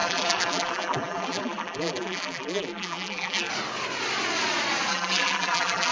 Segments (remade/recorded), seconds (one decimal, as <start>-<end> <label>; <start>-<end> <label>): 0.0-3.5 remade; 3.5-4.9 recorded; 4.9-5.9 remade